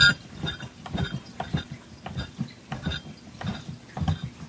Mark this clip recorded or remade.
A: recorded